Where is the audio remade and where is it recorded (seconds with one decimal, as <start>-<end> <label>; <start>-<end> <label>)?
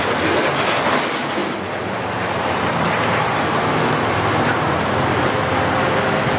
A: 0.0-1.4 recorded; 1.4-5.2 remade; 5.2-6.4 recorded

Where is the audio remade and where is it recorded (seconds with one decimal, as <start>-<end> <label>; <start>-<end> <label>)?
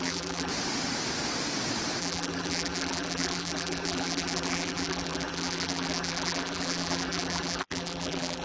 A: 0.0-0.5 remade; 0.5-2.0 recorded; 2.0-8.4 remade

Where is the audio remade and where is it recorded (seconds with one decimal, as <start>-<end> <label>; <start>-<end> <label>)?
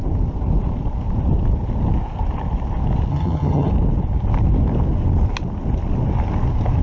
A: 0.0-3.1 recorded; 3.1-3.7 remade; 3.7-6.8 recorded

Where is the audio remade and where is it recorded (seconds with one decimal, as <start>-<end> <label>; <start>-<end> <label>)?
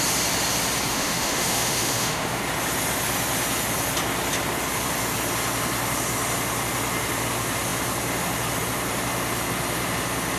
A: 0.0-0.9 recorded; 0.9-2.4 remade; 2.4-10.4 recorded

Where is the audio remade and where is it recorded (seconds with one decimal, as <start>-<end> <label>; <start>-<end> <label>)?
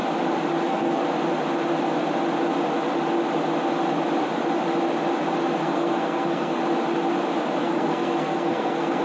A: 0.0-0.6 recorded; 0.6-1.0 remade; 1.0-5.6 recorded; 5.6-6.6 remade; 6.6-7.6 recorded; 7.6-9.0 remade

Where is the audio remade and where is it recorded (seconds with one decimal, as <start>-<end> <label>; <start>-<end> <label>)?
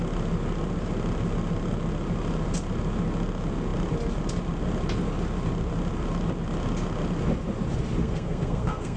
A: 0.0-8.0 recorded; 8.0-9.0 remade